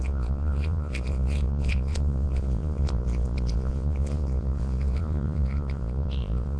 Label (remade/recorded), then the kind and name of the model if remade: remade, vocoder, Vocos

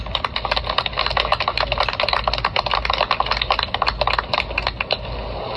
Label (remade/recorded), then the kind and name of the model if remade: recorded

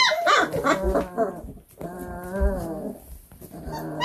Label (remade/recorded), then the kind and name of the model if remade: recorded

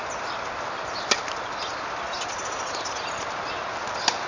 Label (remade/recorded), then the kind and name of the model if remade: recorded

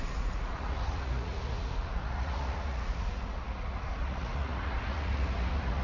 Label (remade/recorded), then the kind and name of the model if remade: remade, vocoder, Vocos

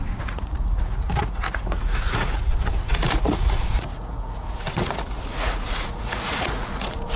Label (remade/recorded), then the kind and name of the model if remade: remade, vocoder, Vocos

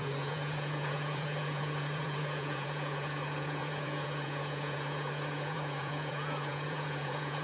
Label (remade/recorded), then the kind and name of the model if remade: remade, vocoder, Vocos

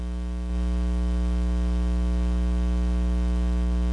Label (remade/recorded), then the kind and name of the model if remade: recorded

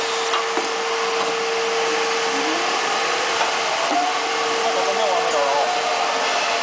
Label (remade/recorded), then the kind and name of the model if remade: recorded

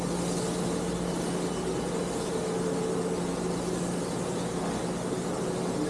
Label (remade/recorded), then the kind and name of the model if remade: recorded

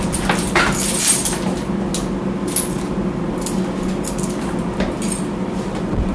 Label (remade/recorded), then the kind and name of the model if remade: recorded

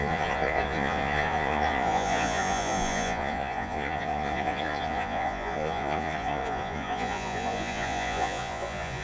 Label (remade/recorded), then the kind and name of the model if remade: remade, vocoder, Vocos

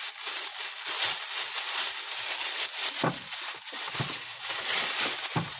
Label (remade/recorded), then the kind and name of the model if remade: recorded